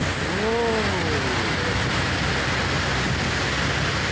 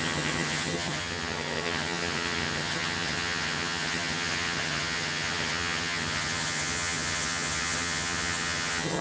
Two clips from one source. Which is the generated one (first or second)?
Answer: second